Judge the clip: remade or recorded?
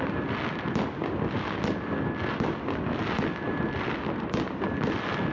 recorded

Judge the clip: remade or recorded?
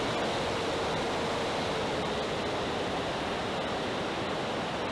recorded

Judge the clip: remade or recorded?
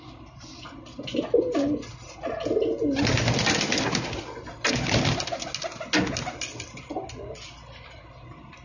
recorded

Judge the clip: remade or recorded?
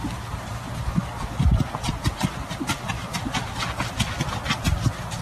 recorded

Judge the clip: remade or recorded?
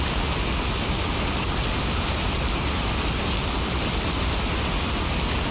recorded